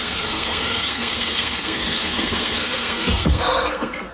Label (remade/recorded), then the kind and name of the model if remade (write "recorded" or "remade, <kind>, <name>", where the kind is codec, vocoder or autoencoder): remade, codec, SNAC